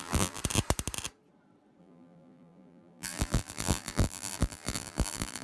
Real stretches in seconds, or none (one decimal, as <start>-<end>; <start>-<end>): 0.4-1.8